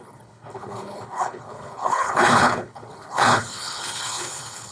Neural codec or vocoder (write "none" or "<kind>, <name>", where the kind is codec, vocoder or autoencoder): codec, HILCodec